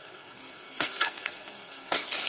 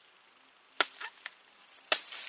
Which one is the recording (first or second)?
second